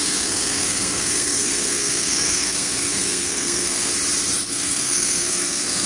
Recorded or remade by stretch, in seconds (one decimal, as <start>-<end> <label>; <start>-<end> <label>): 0.0-3.9 remade; 3.9-4.5 recorded; 4.5-5.9 remade